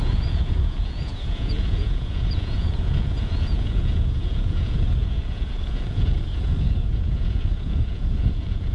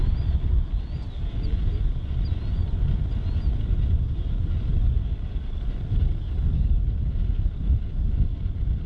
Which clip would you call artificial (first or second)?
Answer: first